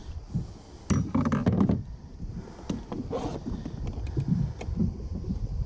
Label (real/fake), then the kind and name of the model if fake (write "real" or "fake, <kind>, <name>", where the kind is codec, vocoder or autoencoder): real